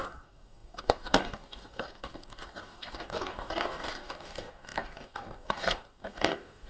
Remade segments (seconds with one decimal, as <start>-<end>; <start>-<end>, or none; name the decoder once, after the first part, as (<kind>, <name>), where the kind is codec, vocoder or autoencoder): 0.0-6.7 (codec, DAC)